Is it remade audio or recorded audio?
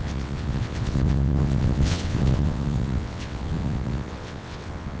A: remade